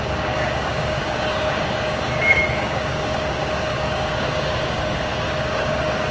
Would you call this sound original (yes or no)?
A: no